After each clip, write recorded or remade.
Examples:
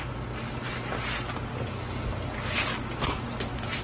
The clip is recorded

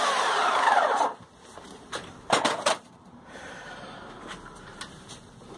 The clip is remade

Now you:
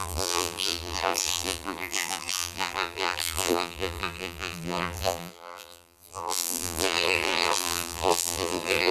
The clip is remade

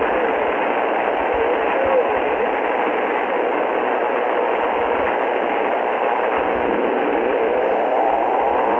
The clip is recorded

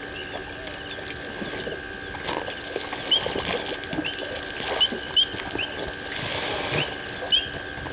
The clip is recorded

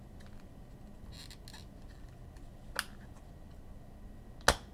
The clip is recorded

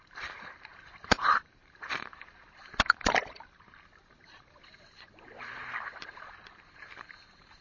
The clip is remade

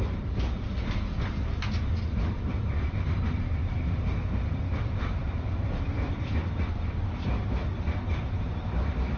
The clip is remade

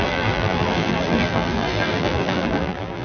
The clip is remade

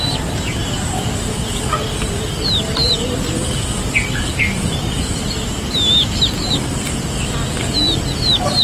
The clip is recorded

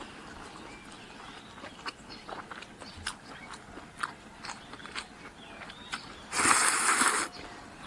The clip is recorded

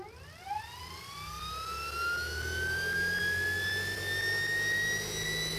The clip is recorded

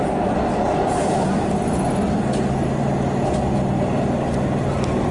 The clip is recorded